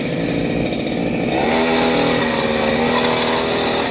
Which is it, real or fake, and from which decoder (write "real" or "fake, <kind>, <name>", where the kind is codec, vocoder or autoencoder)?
real